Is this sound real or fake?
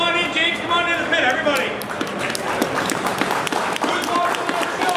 real